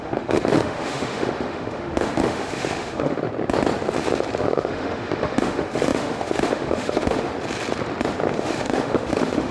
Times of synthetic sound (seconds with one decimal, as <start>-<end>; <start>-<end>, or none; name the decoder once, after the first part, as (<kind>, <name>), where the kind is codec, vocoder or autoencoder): 0.0-3.3 (autoencoder, DAC-VAE); 4.4-7.3; 8.3-9.5